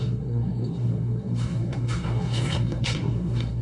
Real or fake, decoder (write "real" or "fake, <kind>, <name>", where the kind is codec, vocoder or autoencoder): fake, codec, SNAC